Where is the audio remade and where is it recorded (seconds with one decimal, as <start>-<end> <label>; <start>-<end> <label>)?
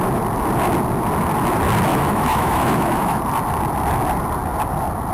0.0-1.9 recorded; 1.9-3.2 remade; 3.2-5.1 recorded